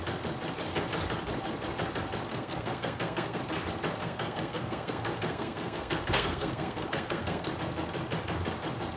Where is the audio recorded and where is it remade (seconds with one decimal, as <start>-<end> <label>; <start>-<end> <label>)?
0.0-2.3 recorded; 2.3-3.4 remade; 3.4-4.0 recorded; 4.0-7.5 remade; 7.5-9.0 recorded